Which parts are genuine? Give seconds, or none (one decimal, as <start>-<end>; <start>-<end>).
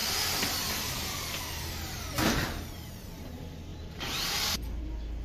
3.1-3.7; 4.8-5.2